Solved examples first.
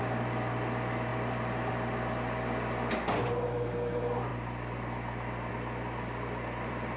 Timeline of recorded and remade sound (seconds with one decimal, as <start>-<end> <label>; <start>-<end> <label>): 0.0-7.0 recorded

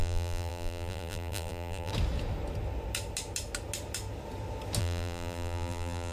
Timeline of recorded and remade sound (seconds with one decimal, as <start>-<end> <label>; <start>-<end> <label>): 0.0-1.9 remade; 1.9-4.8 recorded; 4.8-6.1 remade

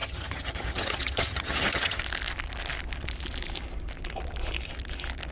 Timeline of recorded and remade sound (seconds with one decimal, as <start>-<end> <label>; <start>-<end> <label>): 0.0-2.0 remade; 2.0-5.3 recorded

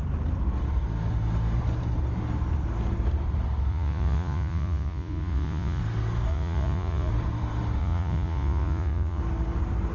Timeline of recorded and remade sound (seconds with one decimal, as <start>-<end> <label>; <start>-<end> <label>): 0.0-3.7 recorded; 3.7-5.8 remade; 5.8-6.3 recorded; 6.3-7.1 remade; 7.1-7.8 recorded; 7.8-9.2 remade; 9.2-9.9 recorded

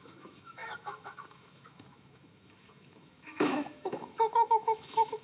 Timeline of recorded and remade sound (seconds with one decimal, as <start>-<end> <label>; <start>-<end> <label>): 0.0-5.2 remade